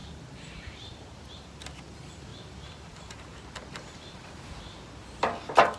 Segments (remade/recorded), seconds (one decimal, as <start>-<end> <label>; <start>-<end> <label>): 0.0-1.2 remade; 1.2-2.3 recorded; 2.3-4.9 remade; 4.9-5.8 recorded